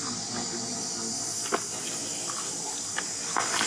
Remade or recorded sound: recorded